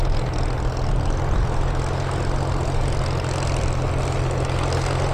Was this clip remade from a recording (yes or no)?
no